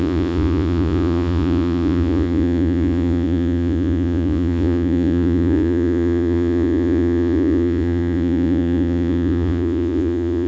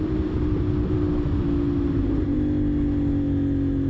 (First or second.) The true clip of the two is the second